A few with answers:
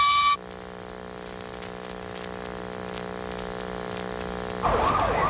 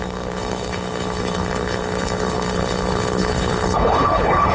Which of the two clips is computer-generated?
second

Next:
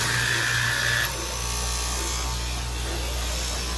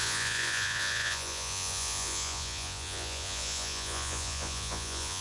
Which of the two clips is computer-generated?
second